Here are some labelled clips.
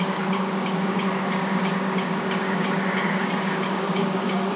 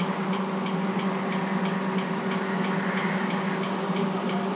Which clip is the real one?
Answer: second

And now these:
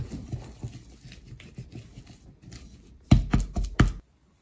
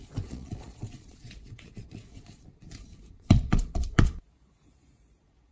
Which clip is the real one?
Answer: first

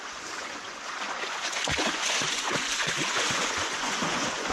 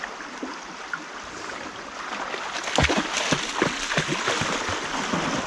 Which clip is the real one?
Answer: second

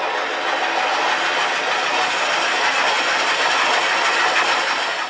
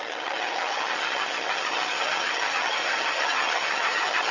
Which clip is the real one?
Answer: first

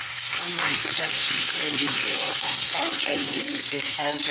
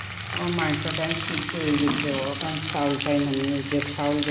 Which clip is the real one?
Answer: second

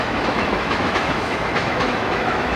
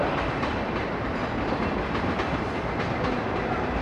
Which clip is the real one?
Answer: second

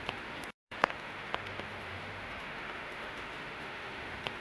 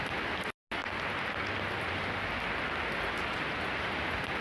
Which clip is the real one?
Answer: second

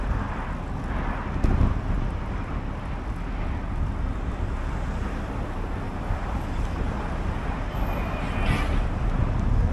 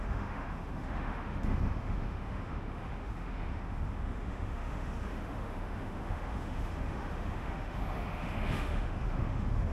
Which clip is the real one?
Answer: first